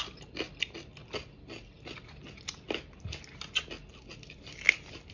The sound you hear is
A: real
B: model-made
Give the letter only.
A